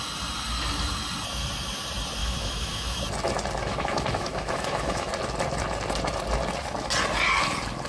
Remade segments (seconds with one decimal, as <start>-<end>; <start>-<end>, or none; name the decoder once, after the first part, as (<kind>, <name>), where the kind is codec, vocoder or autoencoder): 2.2-3.0 (autoencoder, DAC-VAE); 3.6-5.1